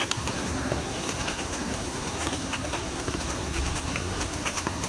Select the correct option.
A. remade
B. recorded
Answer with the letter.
A